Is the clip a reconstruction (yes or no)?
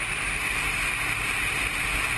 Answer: no